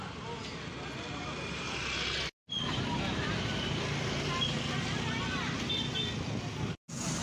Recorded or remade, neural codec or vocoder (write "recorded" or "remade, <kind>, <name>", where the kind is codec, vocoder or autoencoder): recorded